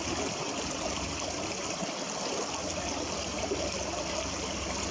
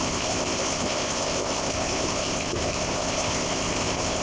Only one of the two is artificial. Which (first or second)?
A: second